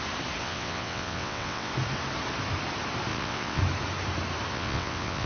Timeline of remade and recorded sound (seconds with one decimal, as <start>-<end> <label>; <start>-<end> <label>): 0.0-0.4 recorded; 0.4-1.7 remade; 1.7-3.1 recorded; 3.1-3.6 remade; 3.6-4.5 recorded; 4.5-5.3 remade